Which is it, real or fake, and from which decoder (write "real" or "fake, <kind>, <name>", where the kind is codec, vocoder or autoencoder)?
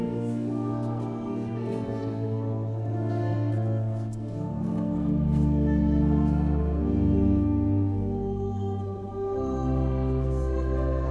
fake, codec, SNAC